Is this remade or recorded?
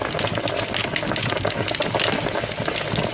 recorded